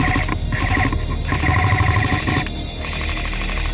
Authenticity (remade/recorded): recorded